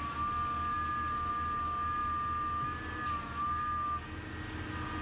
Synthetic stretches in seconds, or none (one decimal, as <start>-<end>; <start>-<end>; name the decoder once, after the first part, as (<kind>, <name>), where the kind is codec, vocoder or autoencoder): none

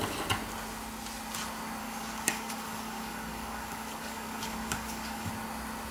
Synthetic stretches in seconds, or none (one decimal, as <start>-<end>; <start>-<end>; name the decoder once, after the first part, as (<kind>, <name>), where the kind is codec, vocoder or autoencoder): 1.8-5.3 (codec, DAC)

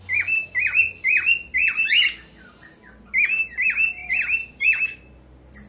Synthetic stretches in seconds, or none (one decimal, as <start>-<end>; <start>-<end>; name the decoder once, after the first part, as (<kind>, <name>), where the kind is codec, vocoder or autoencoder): 4.0-4.8 (vocoder, BigVGAN v2)

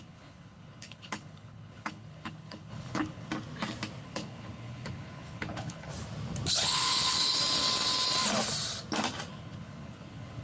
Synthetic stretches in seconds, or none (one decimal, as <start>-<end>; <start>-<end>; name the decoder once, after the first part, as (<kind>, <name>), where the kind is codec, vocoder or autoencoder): 0.0-3.3 (codec, HILCodec); 4.0-5.9; 6.5-7.4; 9.3-10.4